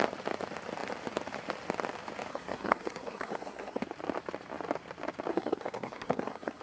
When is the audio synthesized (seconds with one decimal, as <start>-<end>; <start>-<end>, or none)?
2.3-3.8; 5.3-6.6